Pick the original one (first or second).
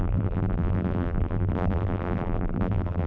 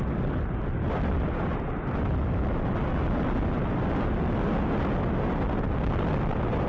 second